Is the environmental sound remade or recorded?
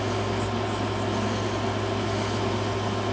recorded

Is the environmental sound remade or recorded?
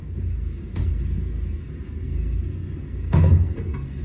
remade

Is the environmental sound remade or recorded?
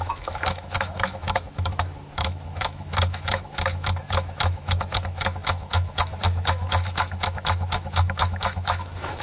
remade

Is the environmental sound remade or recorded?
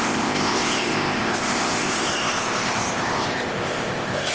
remade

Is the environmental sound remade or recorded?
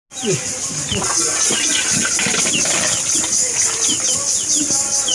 recorded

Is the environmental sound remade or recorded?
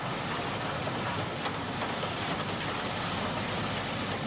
recorded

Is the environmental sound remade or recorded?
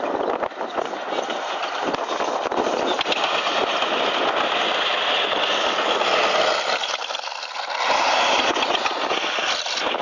recorded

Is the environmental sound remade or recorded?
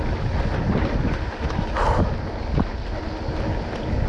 recorded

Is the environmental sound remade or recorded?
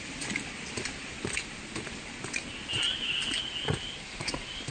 recorded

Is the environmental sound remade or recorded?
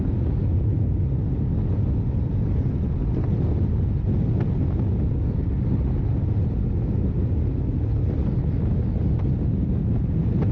recorded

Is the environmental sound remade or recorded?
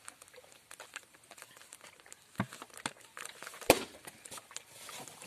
recorded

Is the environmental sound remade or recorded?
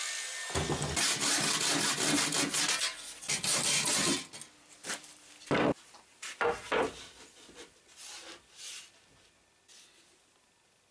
recorded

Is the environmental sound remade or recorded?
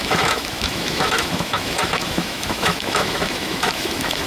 remade